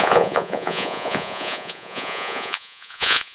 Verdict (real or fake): fake